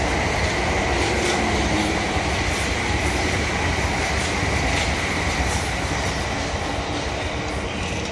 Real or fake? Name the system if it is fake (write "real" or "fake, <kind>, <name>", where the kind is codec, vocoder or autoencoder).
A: real